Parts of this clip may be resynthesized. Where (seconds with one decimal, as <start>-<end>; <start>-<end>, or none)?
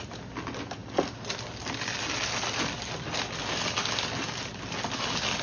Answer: none